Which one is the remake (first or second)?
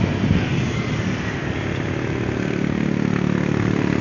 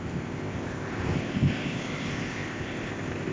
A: second